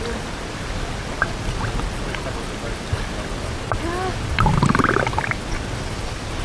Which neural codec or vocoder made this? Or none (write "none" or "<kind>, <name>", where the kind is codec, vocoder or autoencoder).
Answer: none